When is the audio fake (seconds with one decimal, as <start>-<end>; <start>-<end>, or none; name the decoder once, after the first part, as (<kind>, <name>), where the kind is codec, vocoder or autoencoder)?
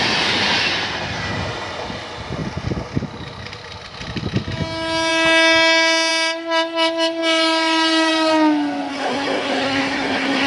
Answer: 8.9-10.5 (codec, SNAC)